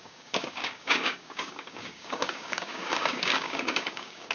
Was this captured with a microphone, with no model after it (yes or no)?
no